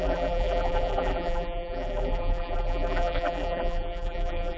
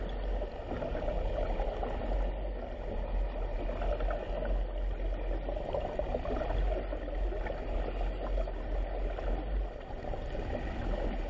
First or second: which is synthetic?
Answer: first